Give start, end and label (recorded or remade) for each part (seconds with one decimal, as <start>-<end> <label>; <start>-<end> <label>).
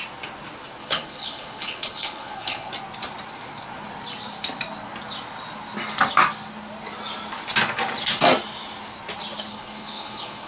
0.0-0.8 recorded; 0.8-2.7 remade; 2.7-9.5 recorded; 9.5-10.5 remade